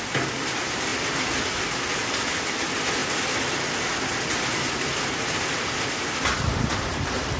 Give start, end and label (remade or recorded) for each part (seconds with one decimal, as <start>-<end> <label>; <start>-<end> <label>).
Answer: 0.0-7.4 recorded